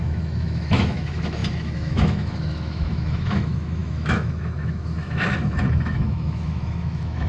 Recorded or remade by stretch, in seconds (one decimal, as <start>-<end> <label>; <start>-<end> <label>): 0.0-7.3 remade